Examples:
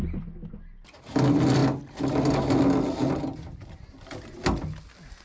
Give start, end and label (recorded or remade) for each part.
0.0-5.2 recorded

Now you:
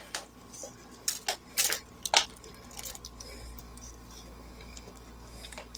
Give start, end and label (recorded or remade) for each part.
0.0-3.6 recorded; 3.6-5.8 remade

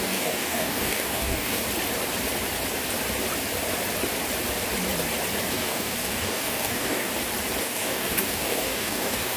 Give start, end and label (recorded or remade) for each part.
0.0-1.6 remade; 1.6-5.5 recorded; 5.5-7.1 remade; 7.1-7.6 recorded; 7.6-9.4 remade

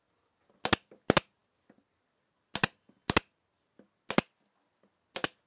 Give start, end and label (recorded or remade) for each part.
0.0-5.5 recorded

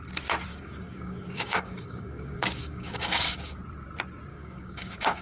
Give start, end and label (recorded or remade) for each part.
0.0-0.5 recorded; 0.5-3.6 remade; 3.6-4.3 recorded; 4.3-5.2 remade

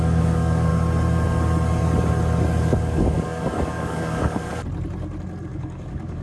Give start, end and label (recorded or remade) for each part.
0.0-0.7 remade; 0.7-2.8 recorded; 2.8-4.5 remade; 4.5-5.5 recorded; 5.5-6.2 remade

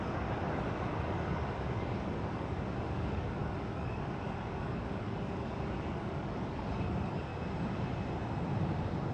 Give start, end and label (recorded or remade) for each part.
0.0-7.3 remade; 7.3-9.1 recorded

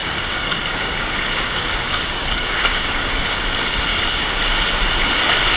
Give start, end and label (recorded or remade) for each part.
0.0-3.4 remade; 3.4-3.9 recorded; 3.9-4.4 remade; 4.4-5.6 recorded